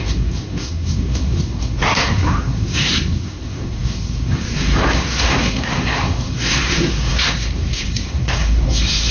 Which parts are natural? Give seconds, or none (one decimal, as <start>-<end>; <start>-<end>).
none